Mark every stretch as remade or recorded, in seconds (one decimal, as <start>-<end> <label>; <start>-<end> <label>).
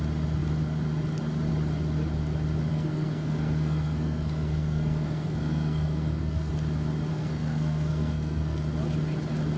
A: 0.0-2.7 recorded; 2.7-6.5 remade; 6.5-7.1 recorded; 7.1-8.6 remade; 8.6-9.6 recorded